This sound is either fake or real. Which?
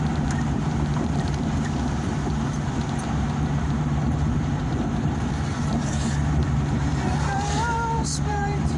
fake